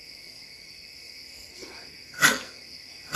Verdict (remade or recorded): remade